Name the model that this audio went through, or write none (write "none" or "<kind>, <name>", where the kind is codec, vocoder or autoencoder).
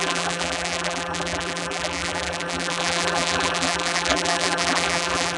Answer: vocoder, BigVGAN v2